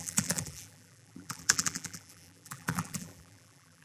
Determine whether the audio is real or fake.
fake